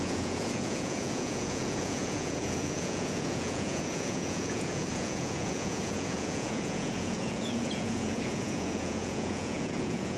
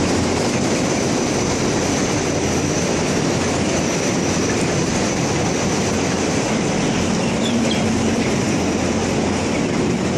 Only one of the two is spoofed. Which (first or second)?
first